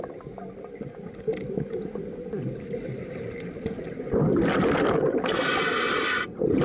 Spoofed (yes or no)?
no